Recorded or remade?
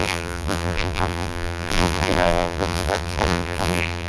remade